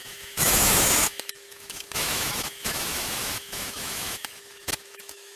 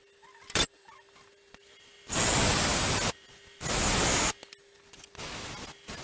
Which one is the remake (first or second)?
first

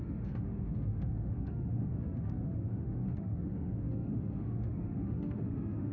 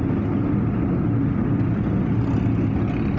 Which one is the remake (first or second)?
first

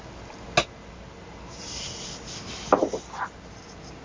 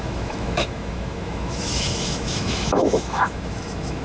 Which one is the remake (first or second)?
second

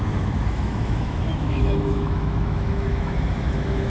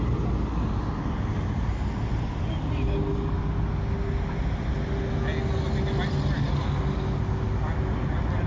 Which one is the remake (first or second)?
first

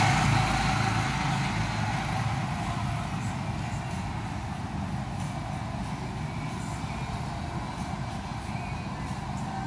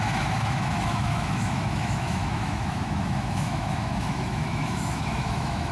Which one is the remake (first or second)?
second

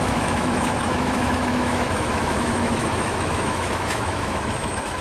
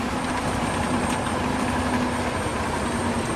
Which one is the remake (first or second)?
first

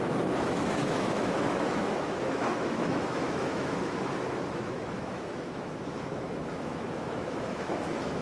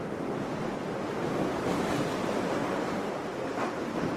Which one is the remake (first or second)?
first